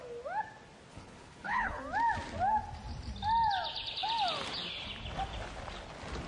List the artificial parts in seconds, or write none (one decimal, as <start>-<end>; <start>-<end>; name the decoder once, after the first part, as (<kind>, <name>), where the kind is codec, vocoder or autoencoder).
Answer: 0.9-1.8 (codec, HILCodec)